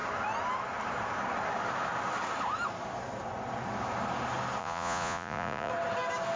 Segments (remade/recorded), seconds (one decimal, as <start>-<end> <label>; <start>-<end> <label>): 0.0-4.6 recorded; 4.6-5.7 remade; 5.7-6.4 recorded